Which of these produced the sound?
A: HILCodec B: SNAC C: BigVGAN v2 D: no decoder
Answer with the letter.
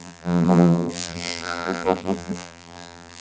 C